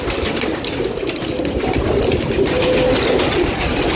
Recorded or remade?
recorded